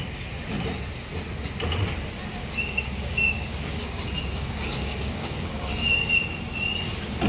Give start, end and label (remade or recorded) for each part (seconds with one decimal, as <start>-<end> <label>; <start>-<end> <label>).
0.0-2.4 recorded; 2.4-6.1 remade; 6.1-7.3 recorded